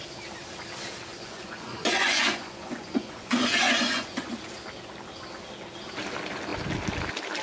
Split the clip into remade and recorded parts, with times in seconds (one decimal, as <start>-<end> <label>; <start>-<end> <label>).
0.0-1.1 recorded; 1.1-4.3 remade; 4.3-7.4 recorded